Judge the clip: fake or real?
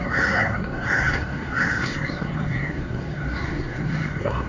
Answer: fake